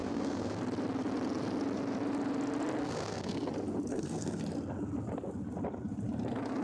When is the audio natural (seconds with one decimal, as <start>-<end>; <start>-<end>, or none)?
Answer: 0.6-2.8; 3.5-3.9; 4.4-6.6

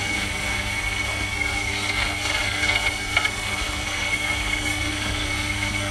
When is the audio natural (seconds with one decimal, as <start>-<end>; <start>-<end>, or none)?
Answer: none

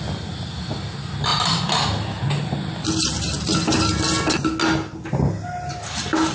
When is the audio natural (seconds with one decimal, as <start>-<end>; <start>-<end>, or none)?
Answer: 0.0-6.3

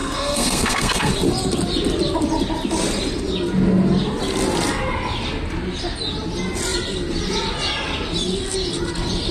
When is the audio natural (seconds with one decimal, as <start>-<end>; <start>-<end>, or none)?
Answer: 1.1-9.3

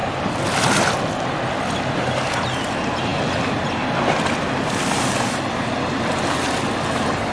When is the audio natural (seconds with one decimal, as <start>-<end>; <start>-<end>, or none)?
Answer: 0.0-7.3

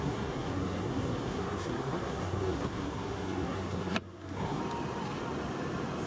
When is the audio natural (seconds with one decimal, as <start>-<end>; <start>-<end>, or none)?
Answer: 4.6-6.1

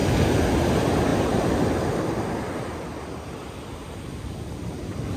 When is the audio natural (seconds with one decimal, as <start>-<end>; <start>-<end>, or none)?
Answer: 0.0-5.2